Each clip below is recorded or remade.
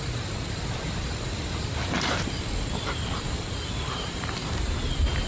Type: recorded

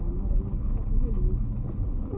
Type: remade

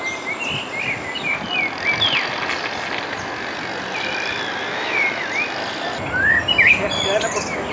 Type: recorded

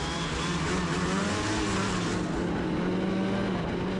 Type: recorded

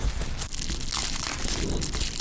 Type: recorded